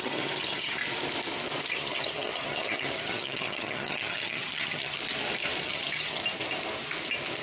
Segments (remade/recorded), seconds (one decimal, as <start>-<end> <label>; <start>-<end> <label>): 0.0-0.8 remade; 0.8-1.7 recorded; 1.7-5.0 remade; 5.0-5.6 recorded; 5.6-6.2 remade; 6.2-7.4 recorded